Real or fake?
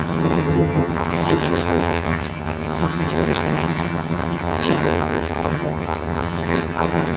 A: fake